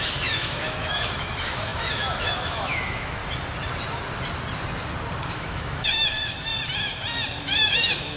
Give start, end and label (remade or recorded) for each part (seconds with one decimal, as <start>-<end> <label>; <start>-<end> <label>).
0.0-3.2 remade; 3.2-5.3 recorded; 5.3-6.5 remade; 6.5-7.4 recorded; 7.4-8.2 remade